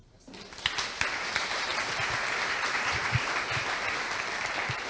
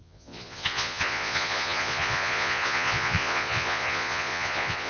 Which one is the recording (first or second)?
first